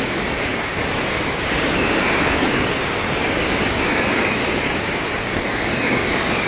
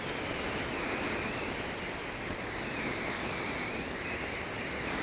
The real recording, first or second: second